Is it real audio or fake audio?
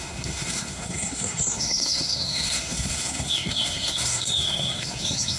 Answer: fake